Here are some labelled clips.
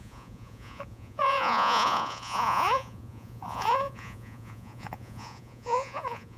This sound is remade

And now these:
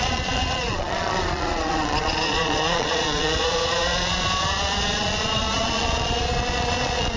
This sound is remade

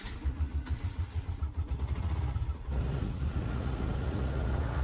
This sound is remade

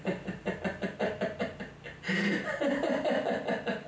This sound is recorded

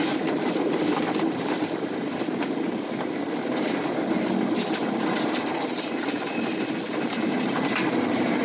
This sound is remade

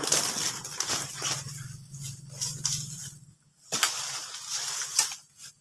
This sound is recorded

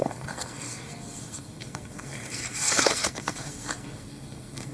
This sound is remade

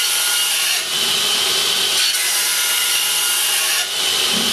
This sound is recorded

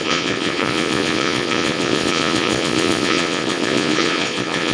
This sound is remade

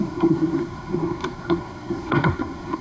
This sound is remade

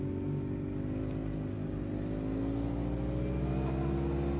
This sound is recorded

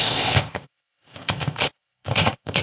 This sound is remade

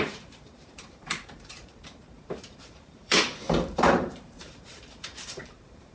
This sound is remade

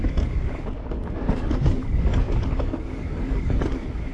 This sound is remade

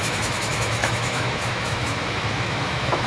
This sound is remade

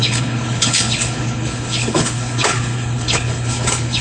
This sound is remade